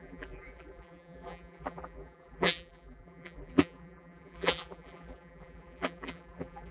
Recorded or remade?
remade